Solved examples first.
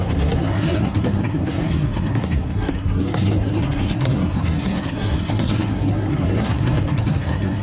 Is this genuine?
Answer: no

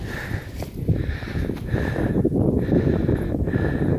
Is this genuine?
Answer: yes